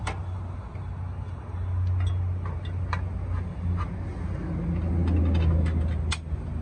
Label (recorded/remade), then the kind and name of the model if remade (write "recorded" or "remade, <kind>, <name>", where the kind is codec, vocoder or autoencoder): recorded